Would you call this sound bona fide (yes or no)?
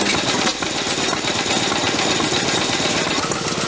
yes